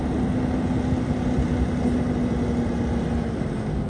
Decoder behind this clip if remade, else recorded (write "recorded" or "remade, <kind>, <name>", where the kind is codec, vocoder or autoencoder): recorded